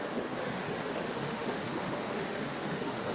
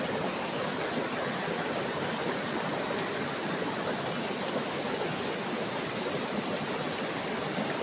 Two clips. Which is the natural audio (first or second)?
second